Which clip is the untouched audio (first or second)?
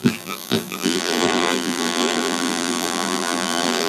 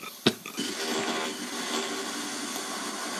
second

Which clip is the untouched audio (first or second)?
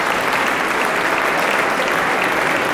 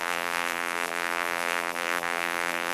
first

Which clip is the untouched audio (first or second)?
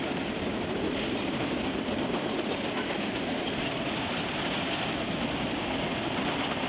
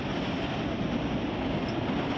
second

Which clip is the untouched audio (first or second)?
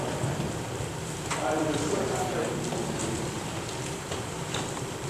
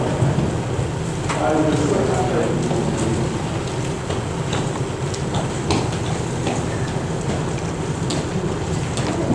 second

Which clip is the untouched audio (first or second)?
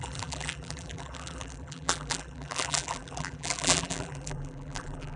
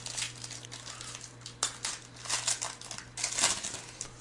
second